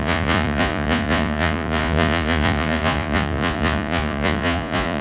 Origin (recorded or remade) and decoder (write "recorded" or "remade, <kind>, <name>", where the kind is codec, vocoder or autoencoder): remade, vocoder, Vocos